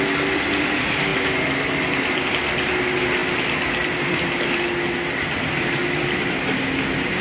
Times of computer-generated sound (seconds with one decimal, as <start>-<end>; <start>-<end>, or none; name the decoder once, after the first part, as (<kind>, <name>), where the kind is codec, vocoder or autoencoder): none